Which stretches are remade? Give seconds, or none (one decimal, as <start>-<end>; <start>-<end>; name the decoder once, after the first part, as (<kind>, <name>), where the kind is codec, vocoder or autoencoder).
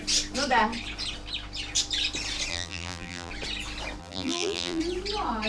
2.5-3.3 (vocoder, BigVGAN v2); 4.0-4.8